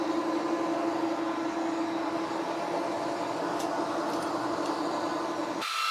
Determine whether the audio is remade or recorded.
recorded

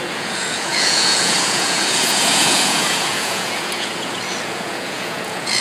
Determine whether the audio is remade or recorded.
remade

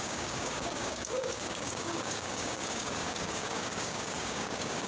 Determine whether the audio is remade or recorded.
remade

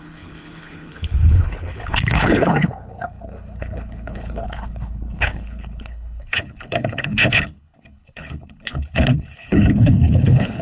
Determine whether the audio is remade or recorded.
remade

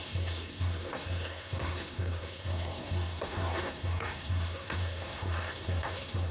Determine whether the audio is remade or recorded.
remade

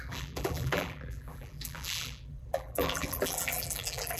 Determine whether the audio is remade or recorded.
remade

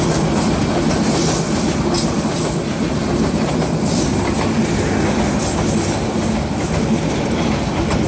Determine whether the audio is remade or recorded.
recorded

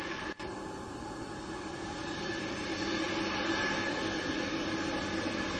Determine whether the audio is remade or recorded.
recorded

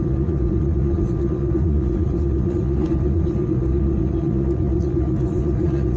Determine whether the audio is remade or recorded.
remade